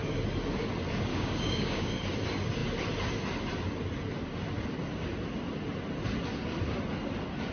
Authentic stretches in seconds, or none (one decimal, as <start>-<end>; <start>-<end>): 0.0-1.1; 1.9-7.5